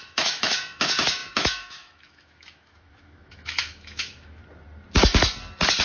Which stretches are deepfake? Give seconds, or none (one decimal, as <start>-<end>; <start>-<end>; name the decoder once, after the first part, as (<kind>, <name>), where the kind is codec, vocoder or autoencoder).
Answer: 0.0-4.4 (autoencoder, DAC-VAE)